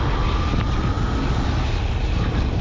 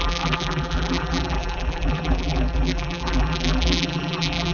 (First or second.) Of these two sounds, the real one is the first